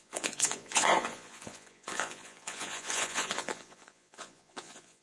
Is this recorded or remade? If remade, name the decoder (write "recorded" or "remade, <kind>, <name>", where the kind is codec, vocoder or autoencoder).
remade, vocoder, Vocos